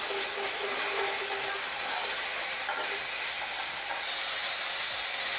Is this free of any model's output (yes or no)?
yes